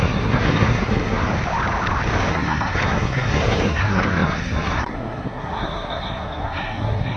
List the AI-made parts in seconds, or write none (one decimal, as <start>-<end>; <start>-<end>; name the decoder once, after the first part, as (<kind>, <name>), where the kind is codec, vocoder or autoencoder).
0.0-1.3 (codec, SNAC); 2.3-7.2